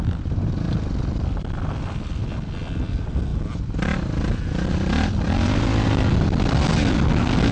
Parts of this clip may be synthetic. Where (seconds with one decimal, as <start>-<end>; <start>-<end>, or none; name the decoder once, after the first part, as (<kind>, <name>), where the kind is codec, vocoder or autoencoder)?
none